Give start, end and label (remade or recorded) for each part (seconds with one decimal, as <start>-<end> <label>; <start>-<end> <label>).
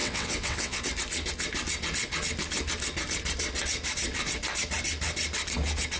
0.0-0.8 remade; 0.8-6.0 recorded